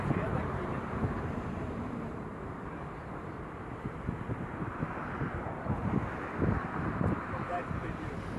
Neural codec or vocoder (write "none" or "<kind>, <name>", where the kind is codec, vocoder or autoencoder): vocoder, BigVGAN v2